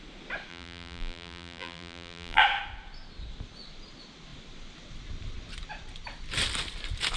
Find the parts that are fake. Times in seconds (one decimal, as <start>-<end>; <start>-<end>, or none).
0.5-2.4

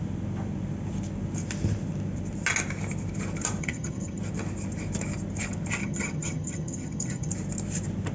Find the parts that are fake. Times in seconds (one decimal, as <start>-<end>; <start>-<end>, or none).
3.6-4.2; 5.8-7.3

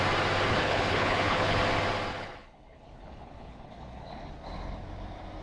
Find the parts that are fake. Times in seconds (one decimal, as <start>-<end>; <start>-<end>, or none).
0.5-1.6; 2.1-4.3